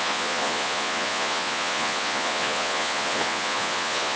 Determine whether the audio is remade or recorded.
remade